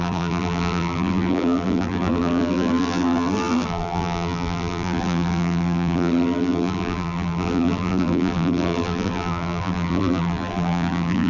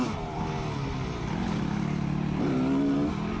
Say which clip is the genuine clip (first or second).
second